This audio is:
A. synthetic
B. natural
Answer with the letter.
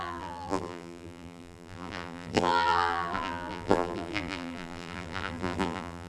A